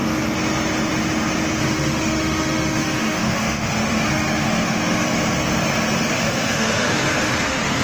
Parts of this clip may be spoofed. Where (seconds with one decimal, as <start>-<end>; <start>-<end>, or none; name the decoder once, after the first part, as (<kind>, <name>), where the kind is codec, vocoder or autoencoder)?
1.6-5.0 (autoencoder, DAC-VAE); 6.1-7.8